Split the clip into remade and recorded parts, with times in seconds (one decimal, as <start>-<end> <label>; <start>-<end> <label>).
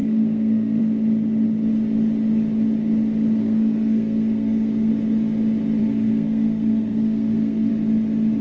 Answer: 0.0-0.8 remade; 0.8-3.4 recorded; 3.4-4.9 remade; 4.9-5.8 recorded; 5.8-7.7 remade; 7.7-8.4 recorded